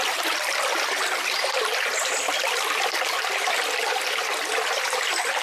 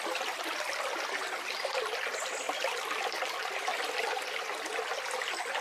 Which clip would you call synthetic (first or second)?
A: first